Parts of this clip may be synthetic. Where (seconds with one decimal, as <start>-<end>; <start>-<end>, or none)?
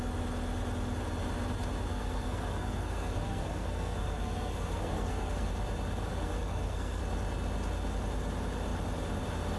1.9-5.5; 6.1-7.0